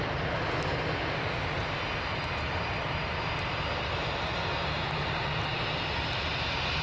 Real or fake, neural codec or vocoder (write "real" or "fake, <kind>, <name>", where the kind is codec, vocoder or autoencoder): real